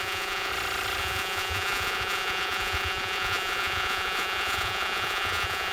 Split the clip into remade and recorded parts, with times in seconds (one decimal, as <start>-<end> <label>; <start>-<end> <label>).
0.0-0.5 remade; 0.5-1.0 recorded; 1.0-5.7 remade